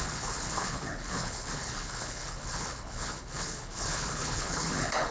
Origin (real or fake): fake